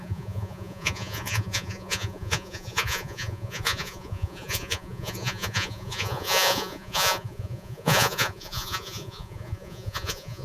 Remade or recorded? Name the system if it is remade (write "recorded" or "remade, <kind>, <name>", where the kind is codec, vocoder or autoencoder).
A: remade, vocoder, Vocos